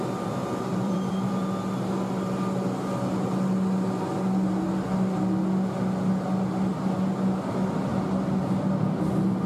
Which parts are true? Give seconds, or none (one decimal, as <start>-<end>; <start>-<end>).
0.0-0.4; 1.3-9.5